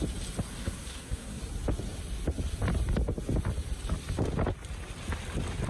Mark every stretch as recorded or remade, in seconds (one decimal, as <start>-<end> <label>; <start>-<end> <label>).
0.0-0.5 recorded; 0.5-1.4 remade; 1.4-5.7 recorded

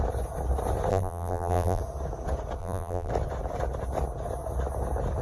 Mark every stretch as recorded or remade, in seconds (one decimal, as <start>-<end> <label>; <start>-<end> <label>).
0.0-0.9 recorded; 0.9-1.8 remade; 1.8-2.6 recorded; 2.6-3.1 remade; 3.1-5.2 recorded

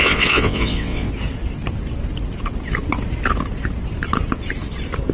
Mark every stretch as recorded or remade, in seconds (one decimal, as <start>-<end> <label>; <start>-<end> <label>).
0.0-1.1 remade; 1.1-5.1 recorded

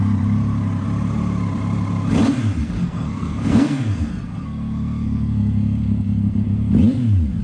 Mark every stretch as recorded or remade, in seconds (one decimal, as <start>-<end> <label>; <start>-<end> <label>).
0.0-2.6 recorded; 2.6-6.7 remade; 6.7-7.4 recorded

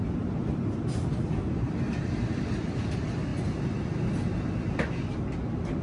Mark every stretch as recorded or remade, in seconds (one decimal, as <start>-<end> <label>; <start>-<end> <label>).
0.0-3.3 remade; 3.3-5.8 recorded